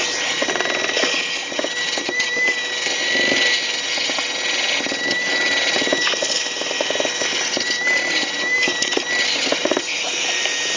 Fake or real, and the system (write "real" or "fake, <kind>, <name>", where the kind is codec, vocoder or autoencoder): real